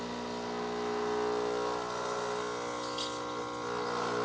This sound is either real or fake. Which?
real